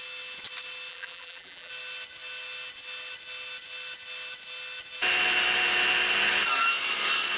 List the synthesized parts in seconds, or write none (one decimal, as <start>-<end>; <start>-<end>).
0.9-1.7